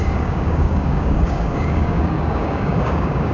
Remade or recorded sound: remade